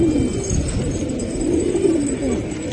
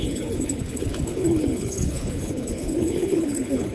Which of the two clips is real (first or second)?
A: first